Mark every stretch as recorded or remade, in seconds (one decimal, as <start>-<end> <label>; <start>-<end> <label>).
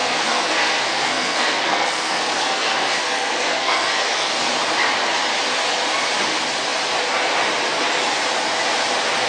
0.0-4.3 remade; 4.3-9.3 recorded